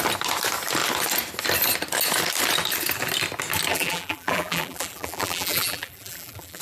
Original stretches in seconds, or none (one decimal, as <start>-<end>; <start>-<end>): 0.0-3.7